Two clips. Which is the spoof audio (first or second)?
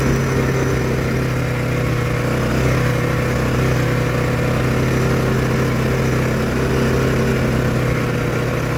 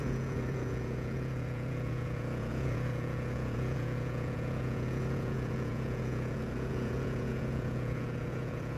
second